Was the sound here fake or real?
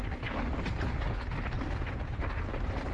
real